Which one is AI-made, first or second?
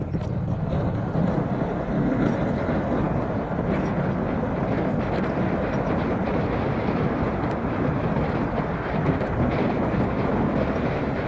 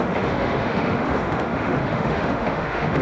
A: second